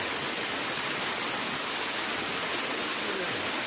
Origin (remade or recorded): recorded